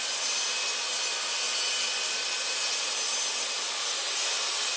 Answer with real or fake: real